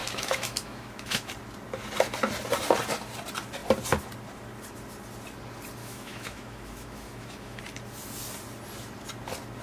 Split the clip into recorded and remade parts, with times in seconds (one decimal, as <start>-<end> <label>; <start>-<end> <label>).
0.0-1.3 remade; 1.3-5.8 recorded; 5.8-7.6 remade; 7.6-9.6 recorded